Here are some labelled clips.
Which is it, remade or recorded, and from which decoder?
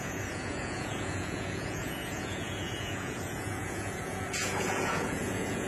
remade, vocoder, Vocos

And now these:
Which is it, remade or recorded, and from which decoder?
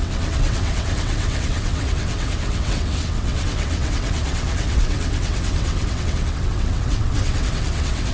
remade, vocoder, WaveNeXt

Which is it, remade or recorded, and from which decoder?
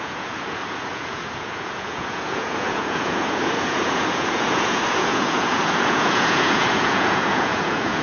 remade, vocoder, Vocos